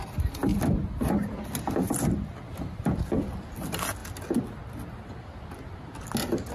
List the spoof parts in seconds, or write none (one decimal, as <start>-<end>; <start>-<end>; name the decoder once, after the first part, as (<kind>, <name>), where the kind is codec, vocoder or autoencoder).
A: none

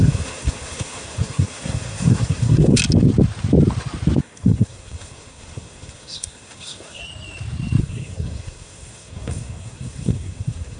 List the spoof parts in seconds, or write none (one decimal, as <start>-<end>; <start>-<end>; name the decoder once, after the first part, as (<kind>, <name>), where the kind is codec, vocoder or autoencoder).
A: 0.0-2.8 (codec, SNAC); 4.2-7.0; 7.8-10.8

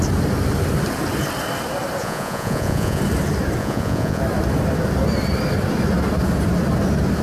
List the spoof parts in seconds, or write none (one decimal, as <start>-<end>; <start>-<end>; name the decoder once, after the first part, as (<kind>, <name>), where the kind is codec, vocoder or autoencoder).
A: 2.0-3.0 (vocoder, Vocos); 3.6-4.2

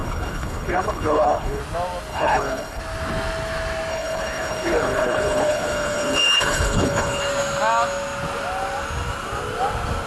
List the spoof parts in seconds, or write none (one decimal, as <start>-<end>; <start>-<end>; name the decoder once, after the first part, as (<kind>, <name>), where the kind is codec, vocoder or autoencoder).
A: 0.0-1.6 (codec, HILCodec); 2.1-2.8; 3.9-7.2